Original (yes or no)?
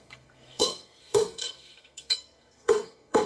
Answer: no